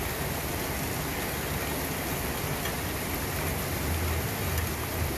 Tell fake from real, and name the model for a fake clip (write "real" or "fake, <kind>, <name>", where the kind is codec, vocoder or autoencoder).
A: real